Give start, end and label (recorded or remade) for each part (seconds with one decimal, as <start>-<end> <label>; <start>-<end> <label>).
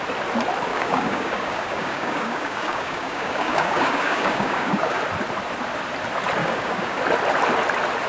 0.0-0.7 recorded; 0.7-5.0 remade; 5.0-6.4 recorded; 6.4-7.0 remade; 7.0-8.1 recorded